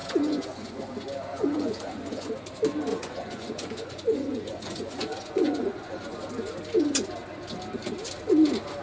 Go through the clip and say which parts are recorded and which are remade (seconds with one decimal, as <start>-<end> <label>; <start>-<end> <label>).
0.0-0.8 remade; 0.8-1.3 recorded; 1.3-2.3 remade; 2.3-2.9 recorded; 2.9-6.2 remade; 6.2-8.8 recorded